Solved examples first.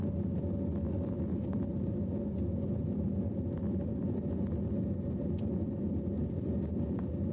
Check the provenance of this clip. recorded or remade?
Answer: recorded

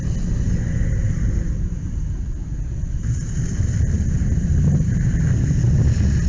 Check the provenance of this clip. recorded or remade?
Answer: recorded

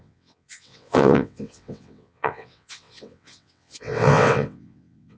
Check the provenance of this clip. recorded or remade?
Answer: remade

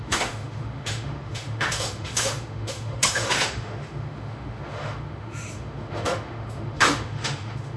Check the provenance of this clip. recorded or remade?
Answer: remade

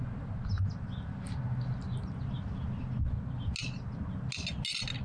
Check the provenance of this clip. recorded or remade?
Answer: recorded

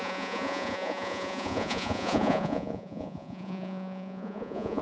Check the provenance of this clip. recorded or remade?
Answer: remade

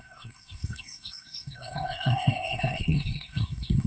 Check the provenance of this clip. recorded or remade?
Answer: remade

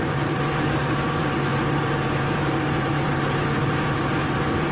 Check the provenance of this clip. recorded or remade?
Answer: remade